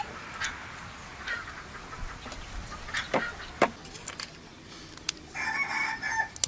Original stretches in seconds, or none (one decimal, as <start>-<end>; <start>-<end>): 0.0-6.5